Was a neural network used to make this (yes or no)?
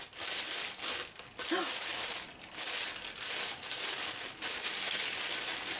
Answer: no